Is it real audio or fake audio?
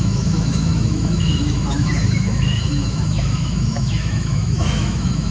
fake